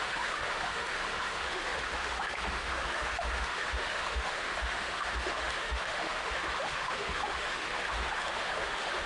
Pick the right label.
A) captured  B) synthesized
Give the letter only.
B